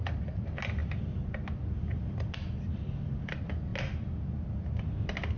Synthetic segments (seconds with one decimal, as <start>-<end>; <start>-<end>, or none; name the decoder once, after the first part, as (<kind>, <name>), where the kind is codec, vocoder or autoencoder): none